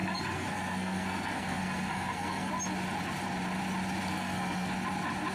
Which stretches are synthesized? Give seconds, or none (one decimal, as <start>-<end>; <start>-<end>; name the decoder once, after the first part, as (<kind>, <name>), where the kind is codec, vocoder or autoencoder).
0.0-2.5 (codec, SNAC); 4.1-4.7